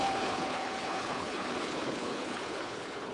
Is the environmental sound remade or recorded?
remade